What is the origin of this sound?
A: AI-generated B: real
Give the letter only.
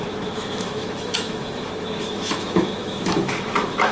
A